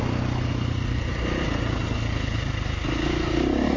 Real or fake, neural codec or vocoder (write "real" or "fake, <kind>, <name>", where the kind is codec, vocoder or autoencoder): real